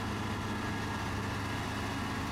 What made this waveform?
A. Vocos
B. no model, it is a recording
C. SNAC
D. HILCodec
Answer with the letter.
B